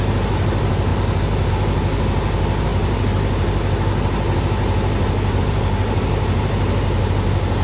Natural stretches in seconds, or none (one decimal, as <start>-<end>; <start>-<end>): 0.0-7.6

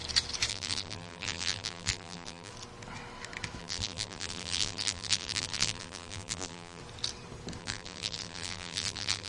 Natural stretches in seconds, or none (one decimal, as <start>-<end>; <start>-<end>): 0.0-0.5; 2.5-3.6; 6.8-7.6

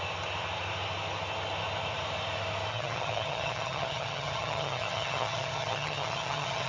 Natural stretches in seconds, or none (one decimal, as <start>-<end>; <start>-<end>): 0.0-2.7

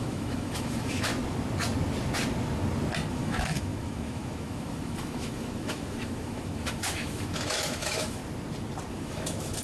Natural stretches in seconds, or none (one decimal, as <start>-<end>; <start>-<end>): 1.1-3.1; 8.2-8.9

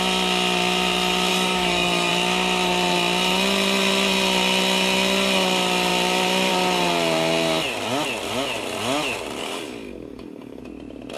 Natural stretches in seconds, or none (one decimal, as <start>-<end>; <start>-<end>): 0.0-1.3; 2.1-9.4; 10.6-11.2

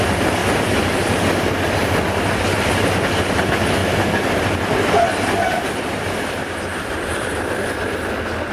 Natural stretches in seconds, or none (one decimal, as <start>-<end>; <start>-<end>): 0.0-6.7; 7.5-8.5

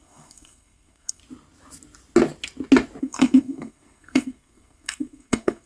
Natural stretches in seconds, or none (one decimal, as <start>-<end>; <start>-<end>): 1.2-3.0

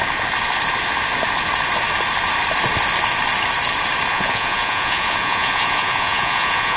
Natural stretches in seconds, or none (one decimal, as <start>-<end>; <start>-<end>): 0.0-4.1